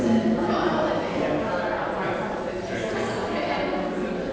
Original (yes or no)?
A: yes